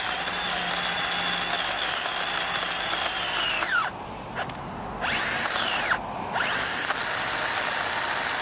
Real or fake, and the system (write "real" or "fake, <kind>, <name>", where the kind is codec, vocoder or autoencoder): real